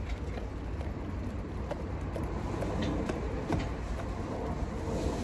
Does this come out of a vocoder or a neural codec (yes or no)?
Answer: no